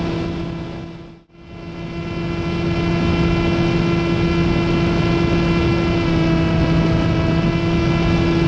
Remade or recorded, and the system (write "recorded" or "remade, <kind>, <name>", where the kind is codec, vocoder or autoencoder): recorded